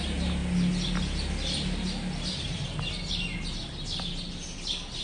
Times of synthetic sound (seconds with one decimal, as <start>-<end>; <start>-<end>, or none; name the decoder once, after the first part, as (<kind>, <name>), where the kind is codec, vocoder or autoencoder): none

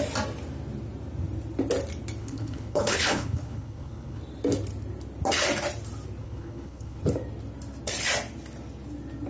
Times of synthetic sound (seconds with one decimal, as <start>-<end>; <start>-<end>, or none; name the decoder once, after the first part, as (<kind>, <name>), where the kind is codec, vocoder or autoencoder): 2.2-4.2 (codec, HILCodec); 6.2-7.0

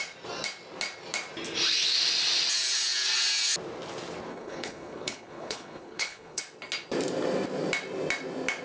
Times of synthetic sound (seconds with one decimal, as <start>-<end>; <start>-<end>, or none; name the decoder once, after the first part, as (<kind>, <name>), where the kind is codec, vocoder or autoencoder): 4.3-6.4 (codec, HILCodec)

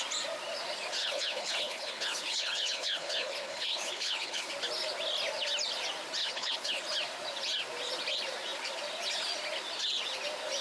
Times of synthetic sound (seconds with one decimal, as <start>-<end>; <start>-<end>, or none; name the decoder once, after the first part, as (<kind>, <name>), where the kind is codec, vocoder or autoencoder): 1.0-4.5 (codec, HILCodec); 6.2-6.8

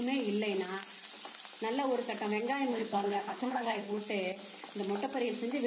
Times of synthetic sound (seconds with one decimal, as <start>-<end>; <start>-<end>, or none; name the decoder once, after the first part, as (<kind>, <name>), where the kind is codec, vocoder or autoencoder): 2.7-4.0 (codec, HILCodec)

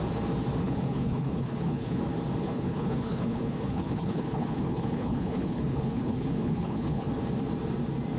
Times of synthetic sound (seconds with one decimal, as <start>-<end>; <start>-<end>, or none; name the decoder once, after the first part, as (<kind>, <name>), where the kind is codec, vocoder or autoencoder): 0.6-2.0 (codec, HILCodec); 2.4-7.1

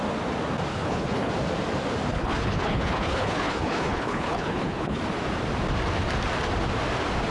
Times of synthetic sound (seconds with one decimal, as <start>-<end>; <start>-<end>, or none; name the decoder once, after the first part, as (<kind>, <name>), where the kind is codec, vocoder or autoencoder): 0.7-1.3 (codec, HILCodec); 2.1-5.0